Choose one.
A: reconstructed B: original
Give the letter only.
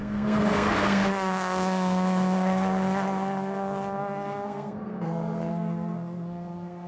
A